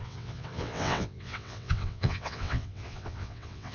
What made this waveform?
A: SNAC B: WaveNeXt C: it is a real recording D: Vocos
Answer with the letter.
B